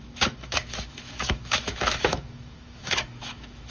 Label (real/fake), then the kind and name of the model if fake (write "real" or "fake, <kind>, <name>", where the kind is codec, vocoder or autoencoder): fake, autoencoder, DAC-VAE